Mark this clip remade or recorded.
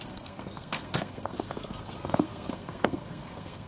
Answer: remade